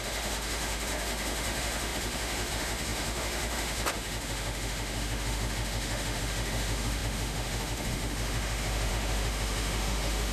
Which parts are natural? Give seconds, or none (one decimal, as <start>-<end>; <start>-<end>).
none